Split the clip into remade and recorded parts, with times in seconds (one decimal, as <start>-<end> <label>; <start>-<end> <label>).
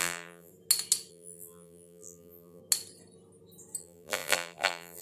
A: 0.0-0.5 remade; 0.5-1.1 recorded; 1.1-2.6 remade; 2.6-3.8 recorded; 3.8-5.0 remade